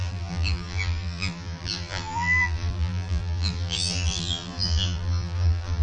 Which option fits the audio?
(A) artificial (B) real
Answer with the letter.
A